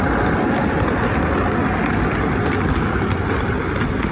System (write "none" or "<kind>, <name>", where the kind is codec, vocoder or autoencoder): none